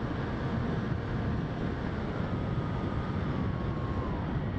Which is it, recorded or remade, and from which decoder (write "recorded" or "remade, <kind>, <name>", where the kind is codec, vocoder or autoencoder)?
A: recorded